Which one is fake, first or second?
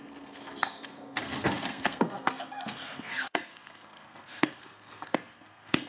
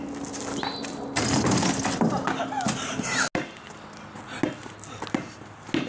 first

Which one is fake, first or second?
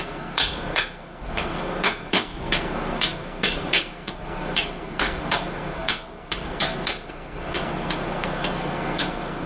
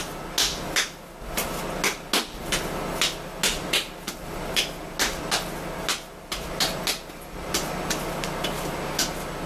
first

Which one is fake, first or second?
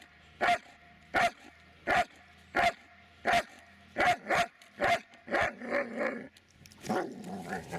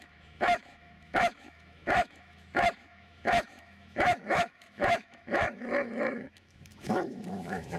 second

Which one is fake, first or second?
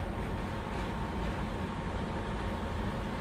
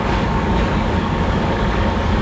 second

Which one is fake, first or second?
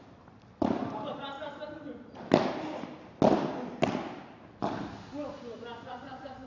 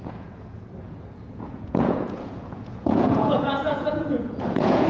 second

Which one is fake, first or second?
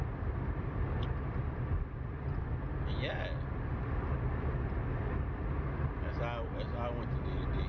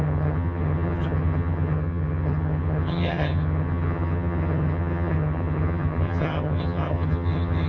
second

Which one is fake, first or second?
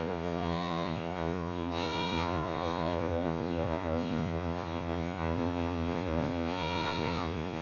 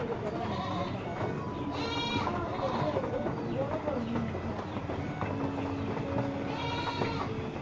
first